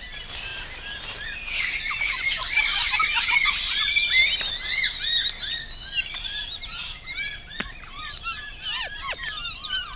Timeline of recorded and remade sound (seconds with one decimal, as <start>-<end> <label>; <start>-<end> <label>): 0.0-0.5 remade; 0.5-1.6 recorded; 1.6-4.2 remade; 4.2-6.1 recorded; 6.1-10.0 remade